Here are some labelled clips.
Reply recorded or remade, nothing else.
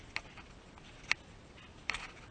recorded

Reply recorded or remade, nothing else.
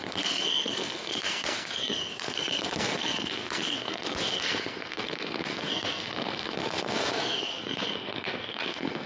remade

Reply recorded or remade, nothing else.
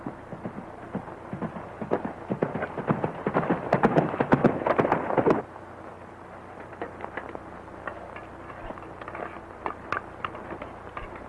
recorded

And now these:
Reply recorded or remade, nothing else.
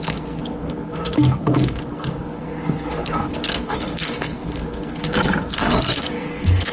remade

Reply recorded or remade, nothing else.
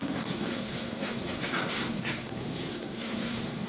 remade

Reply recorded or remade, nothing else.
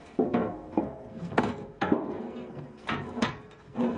remade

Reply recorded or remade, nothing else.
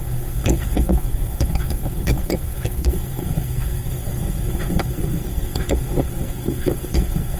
remade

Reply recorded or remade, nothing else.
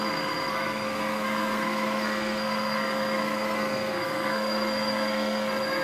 remade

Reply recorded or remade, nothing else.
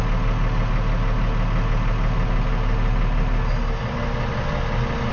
recorded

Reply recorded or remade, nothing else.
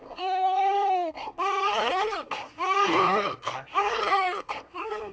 remade